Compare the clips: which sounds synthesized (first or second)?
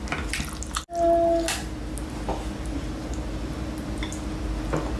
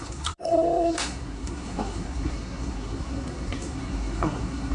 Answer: second